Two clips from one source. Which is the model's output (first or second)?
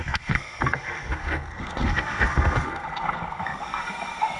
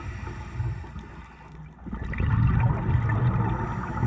first